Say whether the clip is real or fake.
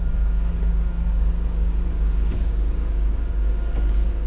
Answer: fake